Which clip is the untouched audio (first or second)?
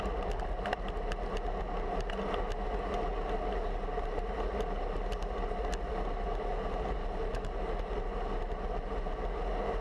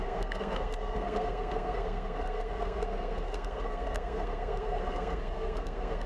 first